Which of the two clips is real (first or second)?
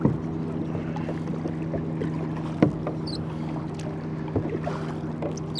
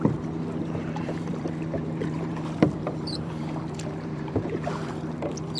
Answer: first